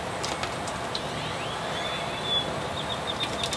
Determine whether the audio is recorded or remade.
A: recorded